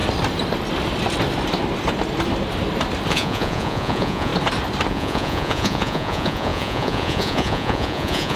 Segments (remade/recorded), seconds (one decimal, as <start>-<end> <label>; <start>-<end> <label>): 0.0-3.1 recorded; 3.1-4.3 remade; 4.3-4.9 recorded; 4.9-8.4 remade